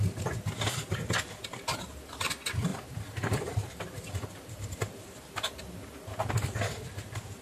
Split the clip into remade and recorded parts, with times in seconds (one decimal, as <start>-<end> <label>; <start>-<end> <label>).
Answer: 0.0-2.7 recorded; 2.7-5.6 remade; 5.6-7.4 recorded